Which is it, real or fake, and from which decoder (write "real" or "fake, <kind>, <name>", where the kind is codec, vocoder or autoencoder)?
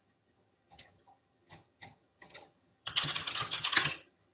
fake, vocoder, HiFi-GAN